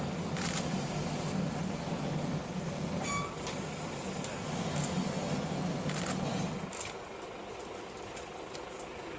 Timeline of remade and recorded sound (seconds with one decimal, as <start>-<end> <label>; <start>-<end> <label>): 0.0-9.2 recorded